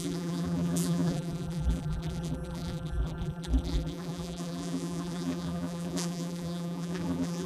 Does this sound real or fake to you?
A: fake